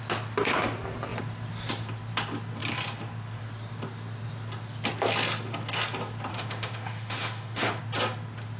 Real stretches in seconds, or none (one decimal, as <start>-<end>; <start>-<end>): 0.0-6.3; 7.8-8.6